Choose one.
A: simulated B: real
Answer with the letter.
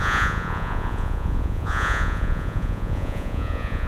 A